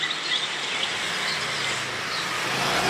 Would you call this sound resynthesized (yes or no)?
no